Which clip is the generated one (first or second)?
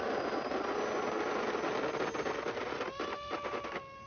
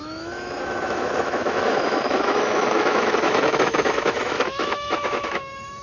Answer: second